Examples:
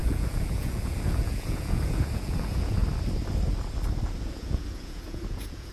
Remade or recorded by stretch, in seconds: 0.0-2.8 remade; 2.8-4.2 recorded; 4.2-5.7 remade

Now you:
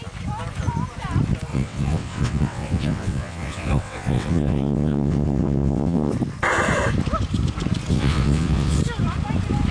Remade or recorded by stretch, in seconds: 0.0-1.5 recorded; 1.5-6.1 remade; 6.1-7.9 recorded; 7.9-8.8 remade; 8.8-9.7 recorded

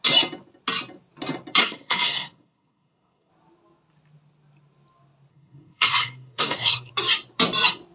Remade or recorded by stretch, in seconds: 0.0-1.6 recorded; 1.6-3.3 remade; 3.3-5.3 recorded; 5.3-6.9 remade; 6.9-7.9 recorded

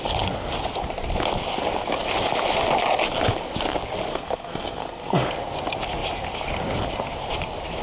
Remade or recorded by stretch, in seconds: 0.0-4.1 recorded; 4.1-5.3 remade; 5.3-7.8 recorded